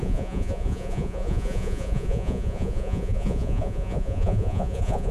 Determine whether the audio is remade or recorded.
remade